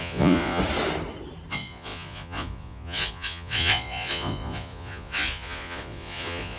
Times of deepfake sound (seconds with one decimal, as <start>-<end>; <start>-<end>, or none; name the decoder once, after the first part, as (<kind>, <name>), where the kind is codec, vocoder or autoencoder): 0.0-0.6 (vocoder, Vocos); 1.5-6.6